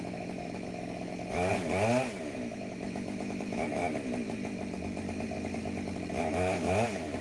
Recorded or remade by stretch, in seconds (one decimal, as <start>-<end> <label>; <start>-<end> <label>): 0.0-1.5 remade; 1.5-2.2 recorded; 2.2-3.8 remade; 3.8-6.1 recorded; 6.1-7.2 remade